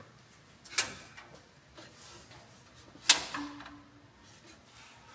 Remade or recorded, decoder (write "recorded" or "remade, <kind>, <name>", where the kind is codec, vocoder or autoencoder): recorded